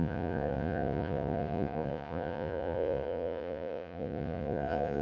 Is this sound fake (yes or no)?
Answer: yes